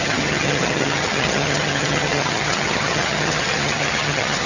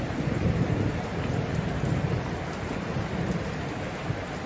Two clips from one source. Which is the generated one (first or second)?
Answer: first